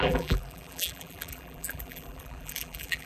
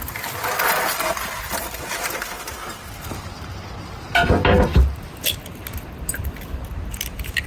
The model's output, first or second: first